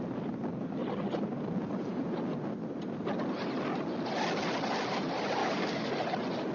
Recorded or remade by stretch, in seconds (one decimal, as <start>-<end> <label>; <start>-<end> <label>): 0.0-5.4 recorded; 5.4-5.9 remade; 5.9-6.5 recorded

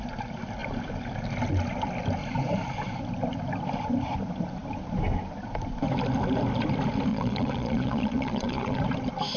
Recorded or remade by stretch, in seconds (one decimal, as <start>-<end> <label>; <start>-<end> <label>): 0.0-7.1 recorded; 7.1-8.8 remade; 8.8-9.4 recorded

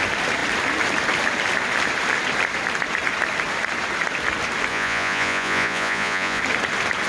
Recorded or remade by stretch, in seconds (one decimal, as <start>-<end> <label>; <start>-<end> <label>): 0.0-4.7 recorded; 4.7-6.4 remade; 6.4-7.1 recorded

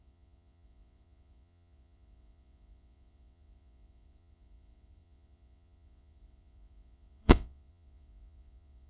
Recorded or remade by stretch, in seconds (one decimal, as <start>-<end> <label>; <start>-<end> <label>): 0.0-8.9 remade

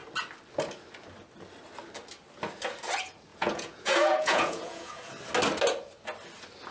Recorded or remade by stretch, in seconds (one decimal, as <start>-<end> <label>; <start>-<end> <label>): 0.0-3.3 recorded; 3.3-5.1 remade; 5.1-6.7 recorded